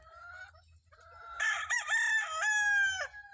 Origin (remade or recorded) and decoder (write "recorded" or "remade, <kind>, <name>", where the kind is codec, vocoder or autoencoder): recorded